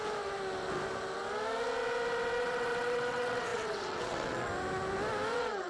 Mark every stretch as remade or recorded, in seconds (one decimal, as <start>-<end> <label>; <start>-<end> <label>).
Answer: 0.0-2.4 recorded; 2.4-4.5 remade; 4.5-5.3 recorded; 5.3-5.7 remade